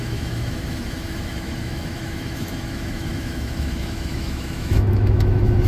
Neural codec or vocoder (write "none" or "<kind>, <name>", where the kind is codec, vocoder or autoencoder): autoencoder, DAC-VAE